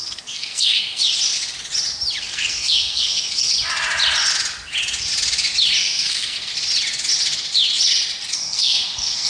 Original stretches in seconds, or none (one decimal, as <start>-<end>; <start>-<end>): 1.0-2.2; 3.5-5.8; 6.5-8.3

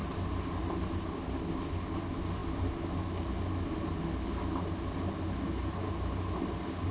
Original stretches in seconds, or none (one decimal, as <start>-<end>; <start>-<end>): 0.0-6.9